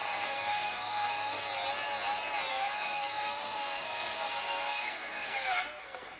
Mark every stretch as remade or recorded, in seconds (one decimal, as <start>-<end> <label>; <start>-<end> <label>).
0.0-1.4 remade; 1.4-2.5 recorded; 2.5-6.2 remade